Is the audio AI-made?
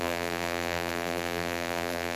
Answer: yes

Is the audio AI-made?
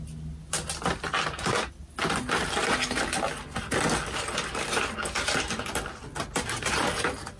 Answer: no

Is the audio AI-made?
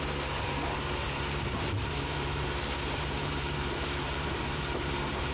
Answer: yes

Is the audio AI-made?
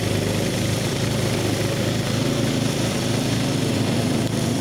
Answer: yes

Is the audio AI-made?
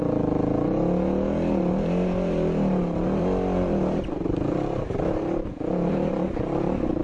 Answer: no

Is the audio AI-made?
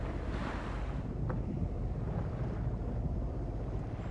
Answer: yes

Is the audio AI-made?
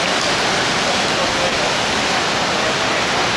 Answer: no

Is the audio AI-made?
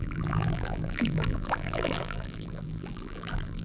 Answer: yes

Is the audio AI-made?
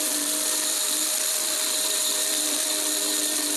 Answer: yes